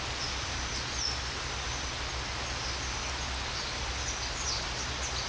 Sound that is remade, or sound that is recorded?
recorded